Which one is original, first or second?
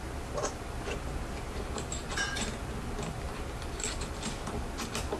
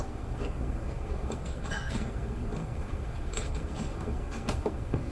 first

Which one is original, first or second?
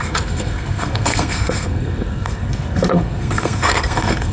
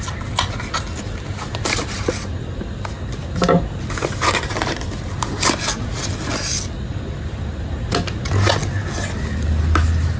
second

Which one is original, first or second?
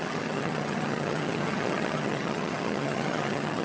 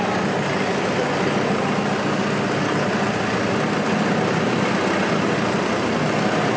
second